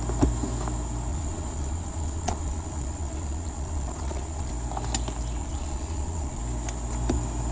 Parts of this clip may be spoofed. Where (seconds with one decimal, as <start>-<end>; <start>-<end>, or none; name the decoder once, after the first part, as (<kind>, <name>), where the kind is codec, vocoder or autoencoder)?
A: 1.1-4.5 (vocoder, Vocos); 5.4-6.4